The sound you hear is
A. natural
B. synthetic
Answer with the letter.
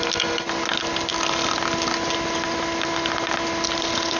A